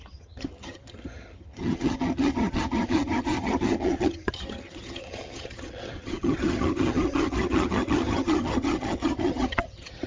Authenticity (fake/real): fake